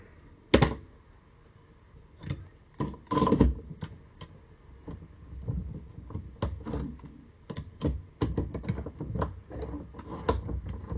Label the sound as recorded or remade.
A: recorded